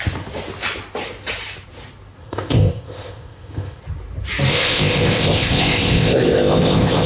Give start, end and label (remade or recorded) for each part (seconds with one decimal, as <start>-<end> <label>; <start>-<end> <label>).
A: 0.0-2.2 recorded; 2.2-3.8 remade; 3.8-4.5 recorded; 4.5-7.1 remade